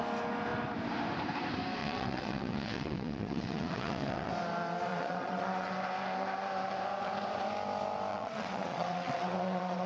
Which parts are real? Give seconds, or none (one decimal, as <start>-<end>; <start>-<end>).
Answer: 0.0-1.8; 4.3-4.9; 5.7-8.1